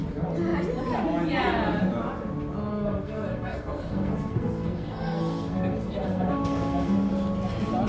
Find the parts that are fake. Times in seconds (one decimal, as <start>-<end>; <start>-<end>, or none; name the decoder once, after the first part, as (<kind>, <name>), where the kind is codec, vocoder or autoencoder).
2.7-7.1 (codec, SNAC)

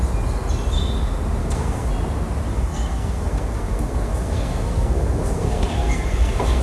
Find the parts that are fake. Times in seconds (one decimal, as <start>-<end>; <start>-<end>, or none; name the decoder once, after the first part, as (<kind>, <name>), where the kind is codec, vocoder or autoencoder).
1.4-1.9 (codec, SNAC); 2.5-6.6

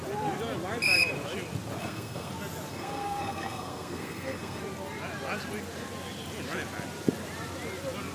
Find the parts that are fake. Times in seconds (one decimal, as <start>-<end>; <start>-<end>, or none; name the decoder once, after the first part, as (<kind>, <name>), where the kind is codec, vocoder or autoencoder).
1.8-2.3 (codec, SNAC); 2.7-4.6

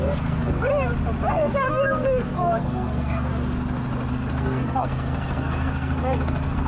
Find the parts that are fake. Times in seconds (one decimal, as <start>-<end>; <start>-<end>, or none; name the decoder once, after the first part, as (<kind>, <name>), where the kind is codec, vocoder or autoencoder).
0.0-0.7 (codec, SNAC); 1.3-3.3; 4.1-6.7

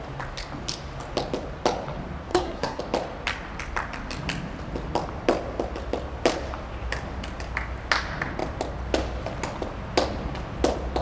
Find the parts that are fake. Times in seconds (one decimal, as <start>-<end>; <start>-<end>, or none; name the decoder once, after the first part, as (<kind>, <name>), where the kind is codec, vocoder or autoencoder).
2.3-2.8 (codec, SNAC)

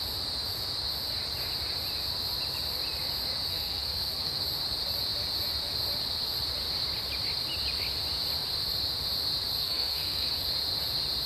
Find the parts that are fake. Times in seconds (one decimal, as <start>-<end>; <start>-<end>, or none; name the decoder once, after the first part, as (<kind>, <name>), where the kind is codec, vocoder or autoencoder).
3.5-4.4 (codec, SNAC); 9.6-10.3

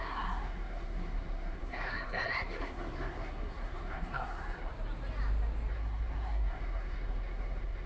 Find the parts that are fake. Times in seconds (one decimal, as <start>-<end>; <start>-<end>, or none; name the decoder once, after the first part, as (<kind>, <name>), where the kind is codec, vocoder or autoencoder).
0.0-4.7 (codec, SNAC); 5.7-7.9

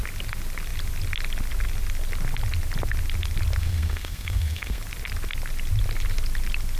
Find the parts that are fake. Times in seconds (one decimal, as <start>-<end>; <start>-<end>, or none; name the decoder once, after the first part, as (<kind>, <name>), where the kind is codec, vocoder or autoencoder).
3.6-4.8 (codec, SNAC)